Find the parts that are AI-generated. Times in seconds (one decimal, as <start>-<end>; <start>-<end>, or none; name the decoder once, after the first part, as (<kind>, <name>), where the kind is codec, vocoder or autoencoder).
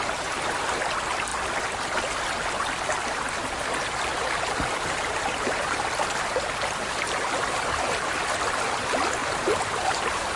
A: 9.2-10.4 (vocoder, BigVGAN v2)